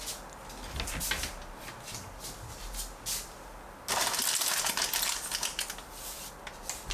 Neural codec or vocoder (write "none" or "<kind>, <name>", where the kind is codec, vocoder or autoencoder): none